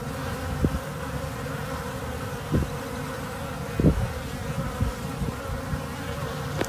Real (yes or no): yes